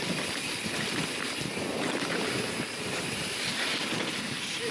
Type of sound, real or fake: real